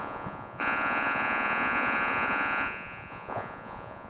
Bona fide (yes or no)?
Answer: no